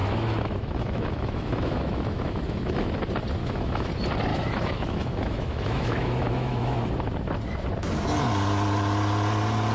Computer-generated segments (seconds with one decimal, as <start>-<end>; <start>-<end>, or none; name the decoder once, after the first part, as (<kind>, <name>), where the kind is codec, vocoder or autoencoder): 0.0-3.0 (autoencoder, DAC-VAE); 3.4-3.9; 4.3-6.9